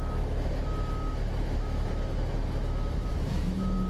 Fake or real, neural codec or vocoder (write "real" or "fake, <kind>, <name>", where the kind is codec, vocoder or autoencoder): fake, autoencoder, DAC-VAE